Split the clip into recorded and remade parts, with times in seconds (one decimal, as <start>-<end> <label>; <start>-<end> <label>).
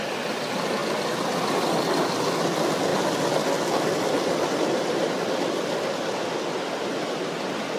0.0-7.8 recorded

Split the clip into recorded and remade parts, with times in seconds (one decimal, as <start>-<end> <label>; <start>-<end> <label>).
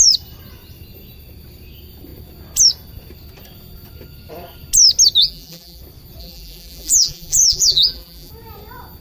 0.0-5.2 recorded; 5.2-5.8 remade; 5.8-6.2 recorded; 6.2-8.3 remade; 8.3-9.0 recorded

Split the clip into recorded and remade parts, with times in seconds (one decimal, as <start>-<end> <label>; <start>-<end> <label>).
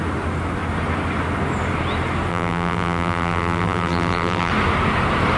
0.0-2.3 recorded; 2.3-4.5 remade; 4.5-5.4 recorded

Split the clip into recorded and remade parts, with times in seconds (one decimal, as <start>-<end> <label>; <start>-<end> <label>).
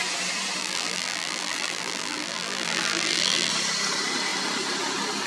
0.0-0.6 recorded; 0.6-3.5 remade; 3.5-5.3 recorded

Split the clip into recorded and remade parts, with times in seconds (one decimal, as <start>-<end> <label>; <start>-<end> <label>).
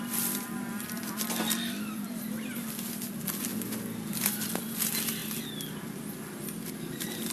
0.0-7.3 recorded